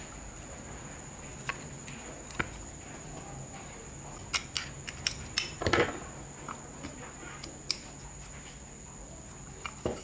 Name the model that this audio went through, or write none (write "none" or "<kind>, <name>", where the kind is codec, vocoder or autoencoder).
none